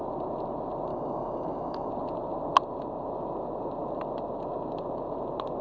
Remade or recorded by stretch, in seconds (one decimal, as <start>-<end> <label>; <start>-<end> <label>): 0.0-0.9 recorded; 0.9-1.9 remade; 1.9-5.6 recorded